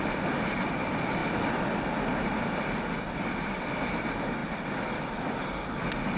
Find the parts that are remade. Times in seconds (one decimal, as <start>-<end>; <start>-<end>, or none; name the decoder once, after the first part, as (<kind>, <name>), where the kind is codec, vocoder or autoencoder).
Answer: none